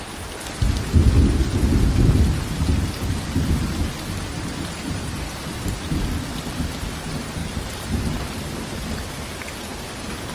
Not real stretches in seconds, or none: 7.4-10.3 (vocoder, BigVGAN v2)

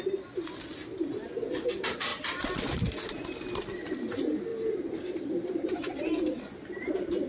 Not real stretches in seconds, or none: 4.5-7.3 (vocoder, BigVGAN v2)

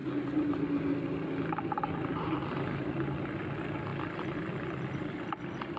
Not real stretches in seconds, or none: none

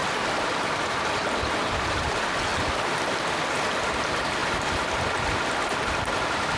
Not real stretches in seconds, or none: 0.0-2.1 (vocoder, BigVGAN v2); 4.4-5.0

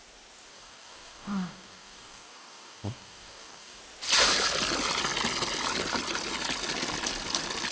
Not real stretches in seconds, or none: 0.5-3.8 (codec, DAC)

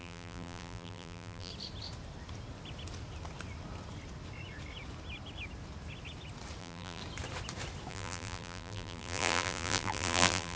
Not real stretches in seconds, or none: 0.0-1.5 (vocoder, BigVGAN v2); 6.6-7.0; 7.9-10.6

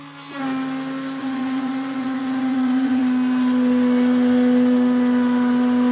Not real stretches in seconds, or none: 1.2-3.0 (vocoder, Vocos)

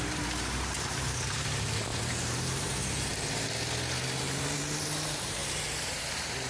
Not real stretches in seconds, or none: 0.0-3.1 (vocoder, BigVGAN v2); 4.2-6.5